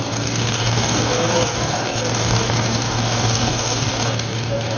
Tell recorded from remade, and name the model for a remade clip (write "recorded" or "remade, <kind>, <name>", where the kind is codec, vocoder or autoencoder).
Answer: remade, codec, DAC